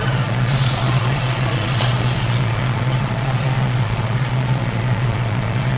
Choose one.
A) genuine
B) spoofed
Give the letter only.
B